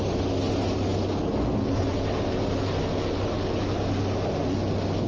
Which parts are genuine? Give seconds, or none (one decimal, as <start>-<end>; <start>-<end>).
0.0-5.1